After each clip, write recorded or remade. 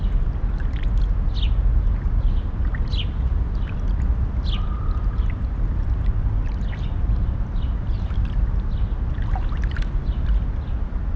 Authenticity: recorded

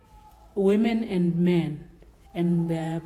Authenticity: remade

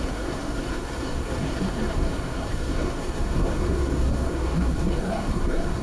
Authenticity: remade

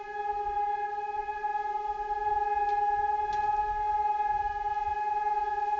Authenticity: recorded